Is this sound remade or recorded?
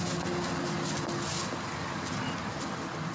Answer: recorded